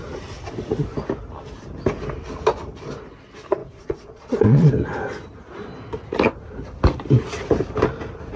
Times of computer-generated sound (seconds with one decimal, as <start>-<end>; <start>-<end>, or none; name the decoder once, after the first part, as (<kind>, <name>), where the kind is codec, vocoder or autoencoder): 3.6-4.7 (vocoder, Vocos)

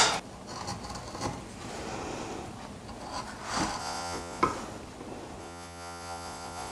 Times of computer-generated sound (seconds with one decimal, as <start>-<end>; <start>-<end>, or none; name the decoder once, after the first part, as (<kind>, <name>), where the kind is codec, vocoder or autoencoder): 3.8-4.4 (vocoder, Vocos); 5.4-6.7

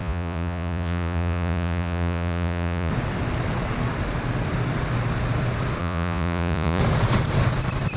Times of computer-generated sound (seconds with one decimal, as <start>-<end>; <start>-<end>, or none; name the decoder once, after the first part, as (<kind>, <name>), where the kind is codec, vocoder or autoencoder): 0.0-2.9 (vocoder, Vocos); 5.8-6.8

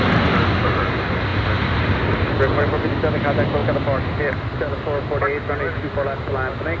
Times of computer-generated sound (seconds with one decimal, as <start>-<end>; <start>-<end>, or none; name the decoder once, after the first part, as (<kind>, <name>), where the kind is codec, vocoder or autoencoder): none

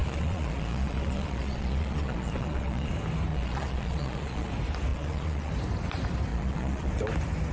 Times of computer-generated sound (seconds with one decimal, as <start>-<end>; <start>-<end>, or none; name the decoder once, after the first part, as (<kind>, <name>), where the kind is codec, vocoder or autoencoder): 0.0-2.9 (vocoder, Vocos); 3.3-4.5; 4.9-5.5; 6.3-6.9